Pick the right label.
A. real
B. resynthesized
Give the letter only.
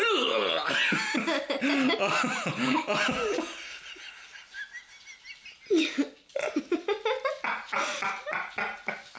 A